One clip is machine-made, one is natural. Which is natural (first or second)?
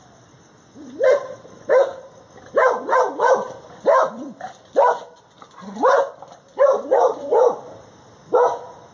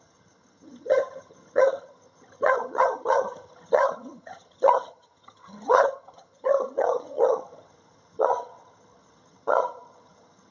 first